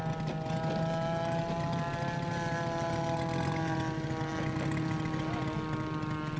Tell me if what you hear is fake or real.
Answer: real